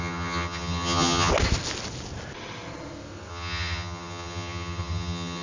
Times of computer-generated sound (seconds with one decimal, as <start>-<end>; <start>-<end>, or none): 0.0-1.3; 3.3-5.4